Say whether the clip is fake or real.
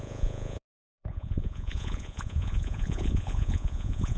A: fake